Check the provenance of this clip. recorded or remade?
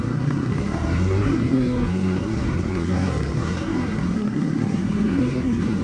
remade